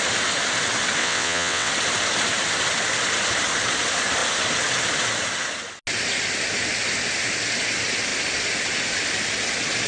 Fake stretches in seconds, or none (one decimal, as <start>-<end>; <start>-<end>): 1.0-1.7